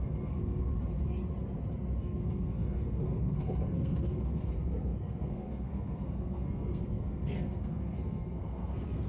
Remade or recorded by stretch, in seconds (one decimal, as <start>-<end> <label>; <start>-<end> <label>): 0.0-0.7 remade; 0.7-2.0 recorded; 2.0-9.1 remade